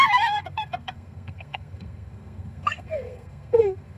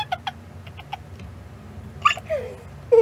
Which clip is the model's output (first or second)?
first